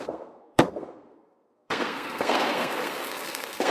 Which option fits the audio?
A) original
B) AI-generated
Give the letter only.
B